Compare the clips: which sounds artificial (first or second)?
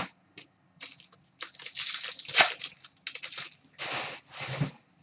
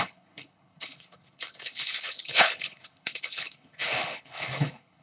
second